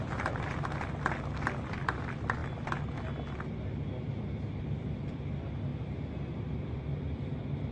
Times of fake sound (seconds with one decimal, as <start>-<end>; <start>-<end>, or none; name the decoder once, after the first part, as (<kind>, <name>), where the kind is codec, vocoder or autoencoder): none